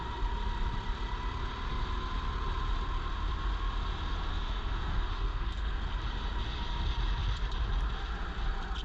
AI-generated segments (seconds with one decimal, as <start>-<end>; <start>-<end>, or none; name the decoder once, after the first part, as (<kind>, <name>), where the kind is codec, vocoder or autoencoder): 4.3-5.9 (codec, SNAC)